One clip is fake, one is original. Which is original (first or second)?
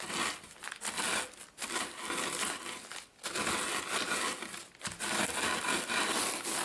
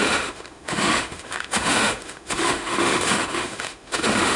first